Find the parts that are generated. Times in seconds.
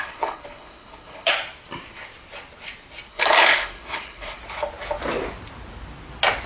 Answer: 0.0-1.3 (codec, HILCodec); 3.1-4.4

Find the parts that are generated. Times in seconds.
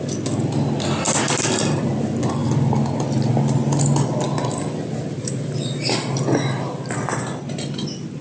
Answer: none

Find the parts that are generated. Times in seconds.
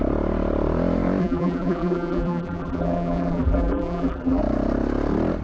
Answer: 1.2-4.4 (vocoder, BigVGAN v2)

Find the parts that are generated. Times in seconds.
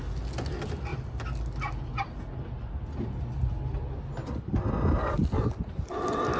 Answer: none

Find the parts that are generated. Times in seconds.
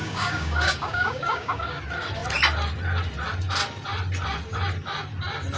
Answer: 0.0-1.8 (codec, DAC)